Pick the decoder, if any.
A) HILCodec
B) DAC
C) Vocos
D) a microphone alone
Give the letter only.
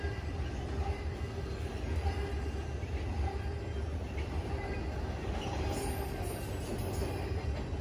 D